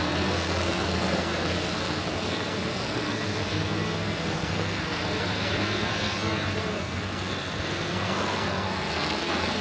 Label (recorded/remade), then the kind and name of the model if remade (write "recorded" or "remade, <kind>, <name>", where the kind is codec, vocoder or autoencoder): remade, codec, SNAC